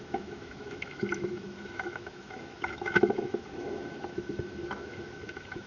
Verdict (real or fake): fake